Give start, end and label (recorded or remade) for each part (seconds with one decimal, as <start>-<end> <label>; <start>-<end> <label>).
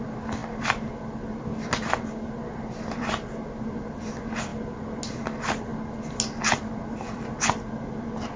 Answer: 0.0-8.4 recorded